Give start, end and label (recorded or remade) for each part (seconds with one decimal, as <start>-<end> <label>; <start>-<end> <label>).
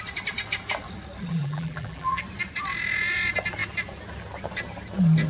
0.0-1.3 recorded; 1.3-2.2 remade; 2.2-5.3 recorded